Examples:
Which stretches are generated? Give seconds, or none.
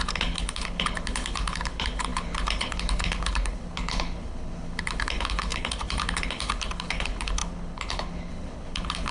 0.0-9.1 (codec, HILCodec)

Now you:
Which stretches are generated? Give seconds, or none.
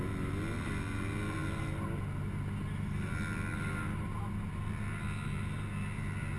none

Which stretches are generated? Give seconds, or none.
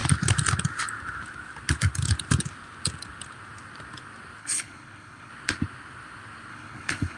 4.4-5.3 (codec, HILCodec); 6.5-7.2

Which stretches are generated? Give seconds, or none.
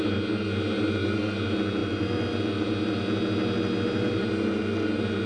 none